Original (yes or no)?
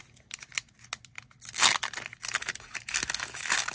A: yes